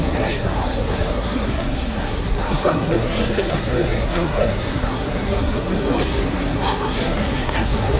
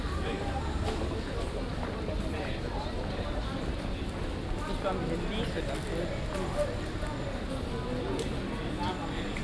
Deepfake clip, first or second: first